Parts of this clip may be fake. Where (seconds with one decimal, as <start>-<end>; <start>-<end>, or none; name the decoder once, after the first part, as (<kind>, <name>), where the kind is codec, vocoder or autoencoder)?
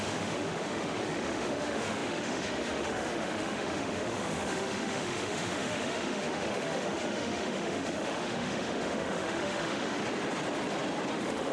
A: 0.0-10.0 (autoencoder, DAC-VAE); 11.1-11.5